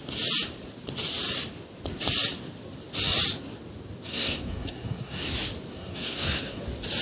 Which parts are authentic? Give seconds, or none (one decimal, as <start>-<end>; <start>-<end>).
0.0-4.1; 5.3-5.7; 6.6-7.0